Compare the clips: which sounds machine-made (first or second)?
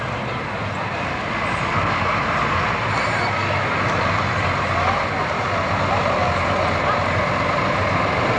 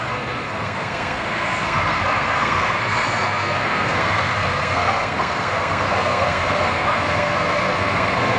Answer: second